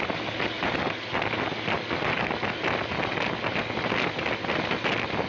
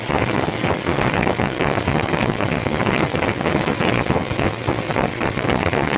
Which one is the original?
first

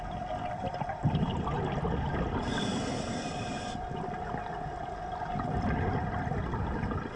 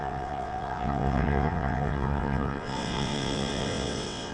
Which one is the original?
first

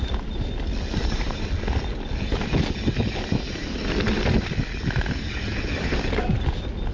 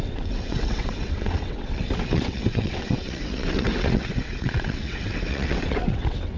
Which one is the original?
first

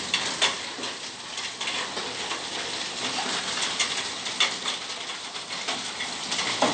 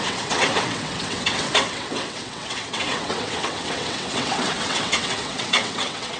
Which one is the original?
first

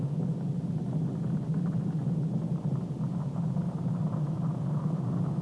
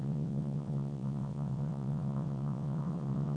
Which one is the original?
first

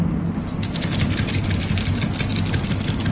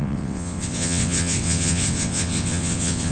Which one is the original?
first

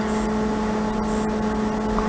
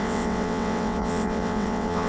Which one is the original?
first